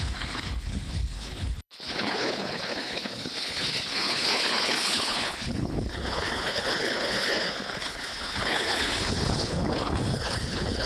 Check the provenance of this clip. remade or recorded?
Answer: remade